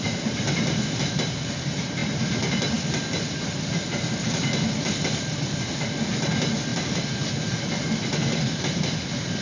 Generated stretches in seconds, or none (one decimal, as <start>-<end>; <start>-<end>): none